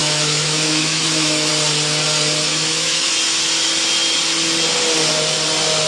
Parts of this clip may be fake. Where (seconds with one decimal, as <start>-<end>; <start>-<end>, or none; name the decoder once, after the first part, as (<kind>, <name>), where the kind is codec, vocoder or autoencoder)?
0.0-1.5 (autoencoder, DAC-VAE); 2.5-3.1

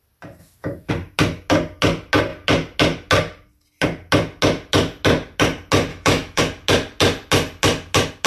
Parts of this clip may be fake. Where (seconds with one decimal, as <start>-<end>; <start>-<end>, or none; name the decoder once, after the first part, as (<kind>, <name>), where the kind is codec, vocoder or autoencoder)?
0.4-0.9 (autoencoder, DAC-VAE); 5.9-6.4